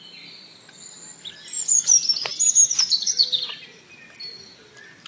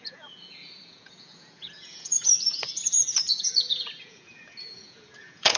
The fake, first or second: second